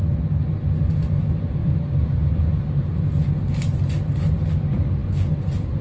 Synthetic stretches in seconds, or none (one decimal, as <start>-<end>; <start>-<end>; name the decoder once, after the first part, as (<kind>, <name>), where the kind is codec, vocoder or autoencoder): 1.6-2.9 (vocoder, BigVGAN v2)